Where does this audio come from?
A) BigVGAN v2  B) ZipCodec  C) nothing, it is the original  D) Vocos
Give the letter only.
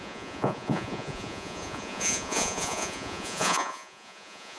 D